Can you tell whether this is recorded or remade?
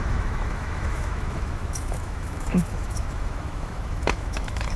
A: remade